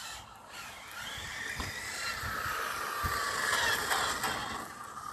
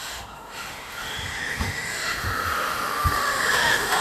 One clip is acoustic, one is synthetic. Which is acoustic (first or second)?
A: first